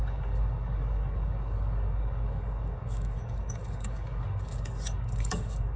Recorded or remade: remade